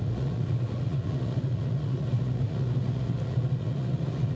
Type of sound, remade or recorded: remade